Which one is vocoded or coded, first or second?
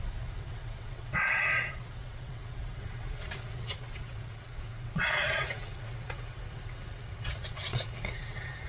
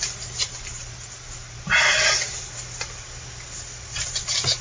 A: first